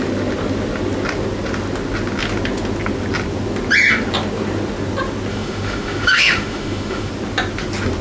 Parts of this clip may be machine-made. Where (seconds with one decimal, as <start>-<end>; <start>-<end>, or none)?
5.3-7.1